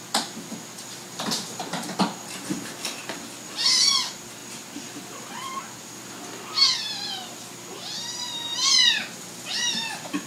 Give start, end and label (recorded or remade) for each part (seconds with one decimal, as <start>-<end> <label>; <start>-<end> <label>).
0.0-10.3 recorded